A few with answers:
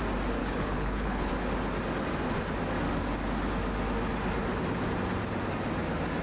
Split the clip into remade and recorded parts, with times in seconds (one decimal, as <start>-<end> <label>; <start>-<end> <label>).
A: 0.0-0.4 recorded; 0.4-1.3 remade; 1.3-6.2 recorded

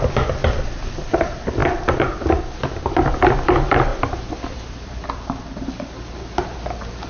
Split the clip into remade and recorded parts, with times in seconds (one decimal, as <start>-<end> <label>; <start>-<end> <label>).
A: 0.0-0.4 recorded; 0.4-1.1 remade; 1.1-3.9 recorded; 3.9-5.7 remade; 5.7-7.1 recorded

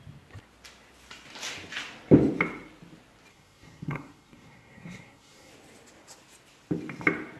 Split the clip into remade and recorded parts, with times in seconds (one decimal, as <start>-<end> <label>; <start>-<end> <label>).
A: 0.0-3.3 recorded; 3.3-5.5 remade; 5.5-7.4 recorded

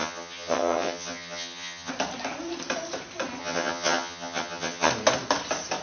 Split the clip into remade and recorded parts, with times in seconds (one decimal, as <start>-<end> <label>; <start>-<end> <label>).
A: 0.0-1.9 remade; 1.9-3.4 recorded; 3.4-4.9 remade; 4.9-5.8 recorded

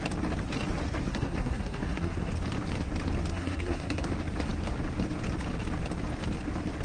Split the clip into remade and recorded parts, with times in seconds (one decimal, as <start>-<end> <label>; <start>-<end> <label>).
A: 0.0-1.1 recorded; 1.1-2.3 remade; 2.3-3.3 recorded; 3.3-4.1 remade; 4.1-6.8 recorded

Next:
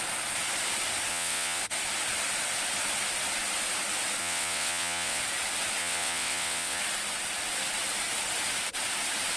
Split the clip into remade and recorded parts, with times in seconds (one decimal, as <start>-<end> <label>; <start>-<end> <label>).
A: 0.0-1.1 recorded; 1.1-1.6 remade; 1.6-4.2 recorded; 4.2-5.2 remade; 5.2-5.8 recorded; 5.8-6.8 remade; 6.8-9.4 recorded